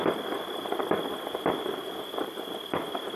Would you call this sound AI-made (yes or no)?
no